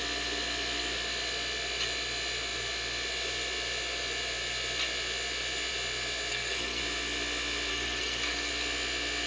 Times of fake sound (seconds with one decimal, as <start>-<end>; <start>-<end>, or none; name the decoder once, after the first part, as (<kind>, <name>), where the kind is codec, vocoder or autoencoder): 6.3-6.8 (codec, SNAC); 7.7-8.5